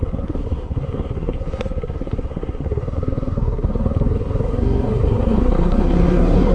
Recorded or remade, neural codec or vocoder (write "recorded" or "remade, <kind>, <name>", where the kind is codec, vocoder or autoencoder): remade, codec, SNAC